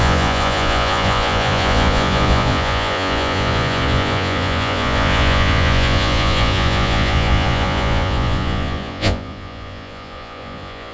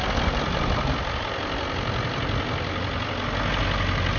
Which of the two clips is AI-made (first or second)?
first